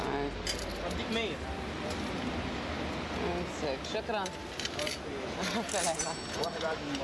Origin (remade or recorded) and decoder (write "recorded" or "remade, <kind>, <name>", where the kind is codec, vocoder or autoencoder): recorded